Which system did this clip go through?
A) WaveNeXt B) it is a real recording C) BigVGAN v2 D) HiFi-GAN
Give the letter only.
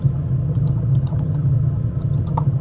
D